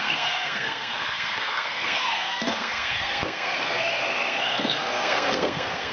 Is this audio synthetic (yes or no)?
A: yes